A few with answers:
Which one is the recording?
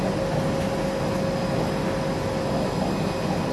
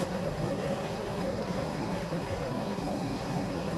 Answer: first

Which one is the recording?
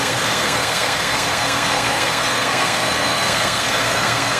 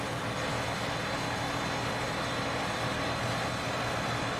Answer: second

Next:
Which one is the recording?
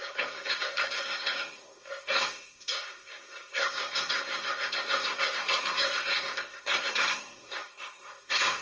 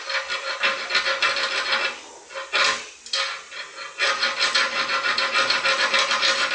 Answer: second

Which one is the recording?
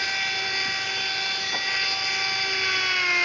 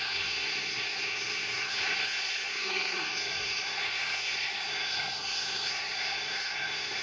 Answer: first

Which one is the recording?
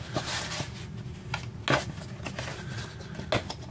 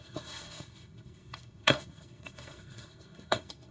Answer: first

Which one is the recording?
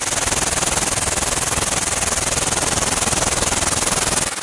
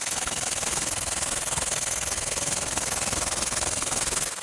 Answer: first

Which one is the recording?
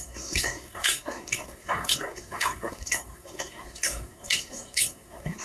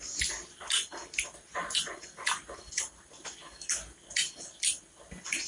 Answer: second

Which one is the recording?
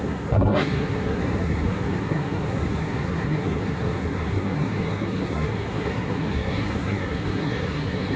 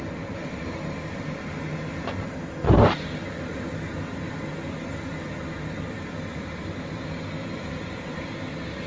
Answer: second